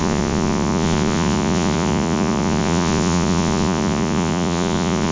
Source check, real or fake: fake